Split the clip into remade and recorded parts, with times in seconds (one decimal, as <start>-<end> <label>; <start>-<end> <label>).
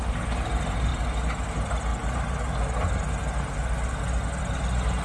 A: 0.0-5.0 recorded